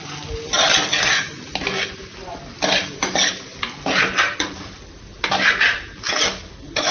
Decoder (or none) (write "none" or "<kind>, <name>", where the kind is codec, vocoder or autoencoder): none